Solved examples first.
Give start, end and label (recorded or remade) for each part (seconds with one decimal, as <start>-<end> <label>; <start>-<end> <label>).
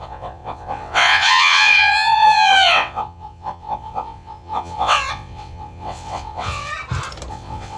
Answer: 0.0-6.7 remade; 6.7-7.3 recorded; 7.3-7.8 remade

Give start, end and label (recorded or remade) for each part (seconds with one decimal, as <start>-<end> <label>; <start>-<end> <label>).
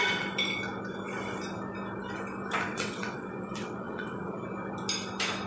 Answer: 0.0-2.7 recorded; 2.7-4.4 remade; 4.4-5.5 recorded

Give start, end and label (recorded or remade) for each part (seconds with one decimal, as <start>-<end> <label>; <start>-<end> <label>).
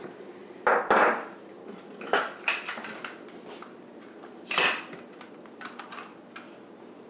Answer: 0.0-7.1 recorded